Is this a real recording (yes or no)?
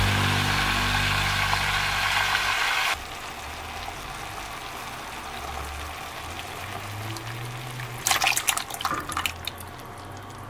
yes